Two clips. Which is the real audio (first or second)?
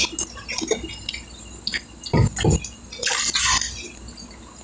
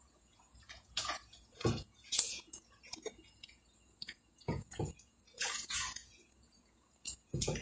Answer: first